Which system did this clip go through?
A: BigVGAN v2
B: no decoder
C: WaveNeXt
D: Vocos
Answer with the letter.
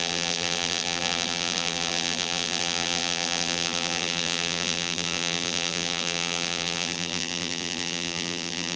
A